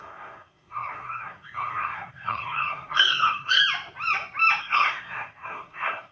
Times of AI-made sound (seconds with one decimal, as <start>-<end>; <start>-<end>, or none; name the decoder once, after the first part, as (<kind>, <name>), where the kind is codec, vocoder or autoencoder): 0.0-3.6 (codec, SNAC); 4.6-6.1